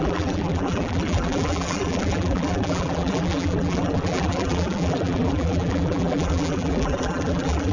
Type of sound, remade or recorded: remade